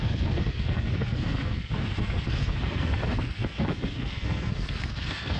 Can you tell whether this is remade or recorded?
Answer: remade